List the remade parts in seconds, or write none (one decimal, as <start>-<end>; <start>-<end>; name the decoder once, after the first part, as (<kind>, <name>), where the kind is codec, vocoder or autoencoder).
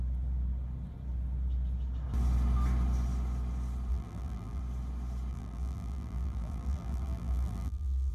3.9-4.6 (vocoder, BigVGAN v2); 5.3-8.1